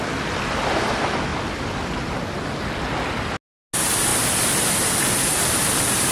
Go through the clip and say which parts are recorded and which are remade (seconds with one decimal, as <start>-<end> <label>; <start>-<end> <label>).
0.0-6.1 recorded